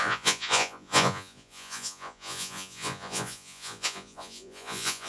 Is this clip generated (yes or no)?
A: yes